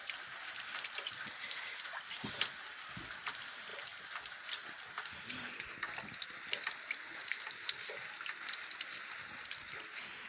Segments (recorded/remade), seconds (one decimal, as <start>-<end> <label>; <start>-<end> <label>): 0.0-10.3 recorded